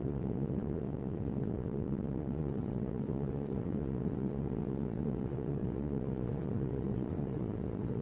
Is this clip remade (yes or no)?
yes